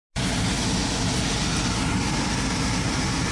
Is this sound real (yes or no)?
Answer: yes